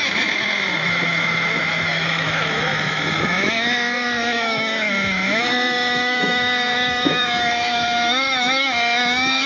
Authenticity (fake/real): fake